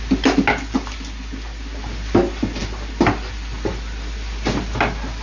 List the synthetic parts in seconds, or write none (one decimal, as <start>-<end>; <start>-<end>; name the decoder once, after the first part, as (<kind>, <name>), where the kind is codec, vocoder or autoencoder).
none